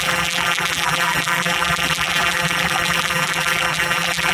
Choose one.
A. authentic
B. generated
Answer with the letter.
B